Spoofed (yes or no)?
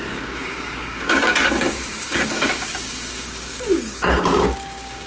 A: yes